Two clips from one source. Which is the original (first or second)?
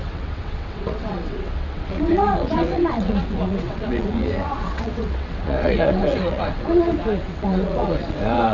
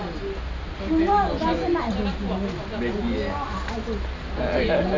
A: second